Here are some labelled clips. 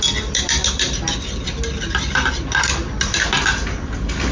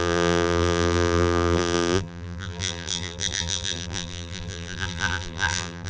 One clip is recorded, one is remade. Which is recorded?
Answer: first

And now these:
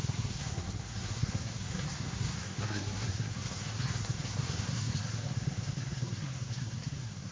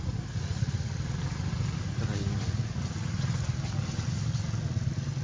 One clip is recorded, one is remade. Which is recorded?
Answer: second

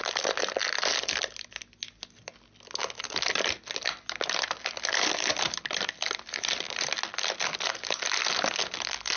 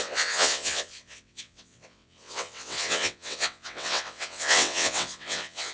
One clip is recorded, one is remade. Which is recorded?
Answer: first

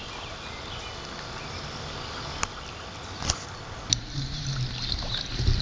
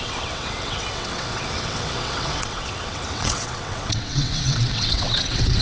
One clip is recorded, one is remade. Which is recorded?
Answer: first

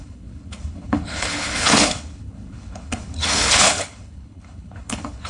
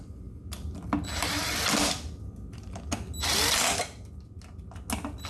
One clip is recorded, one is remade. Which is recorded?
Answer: second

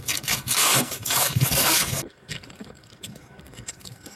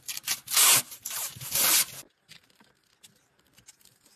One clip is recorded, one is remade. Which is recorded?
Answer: second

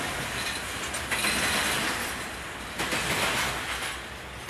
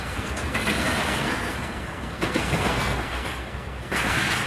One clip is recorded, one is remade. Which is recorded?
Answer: first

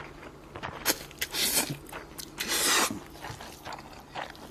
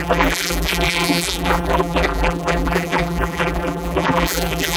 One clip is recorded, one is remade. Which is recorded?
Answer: first